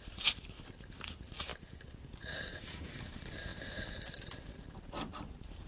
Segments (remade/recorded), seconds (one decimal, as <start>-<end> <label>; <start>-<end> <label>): 0.0-1.5 remade; 1.5-2.1 recorded; 2.1-5.7 remade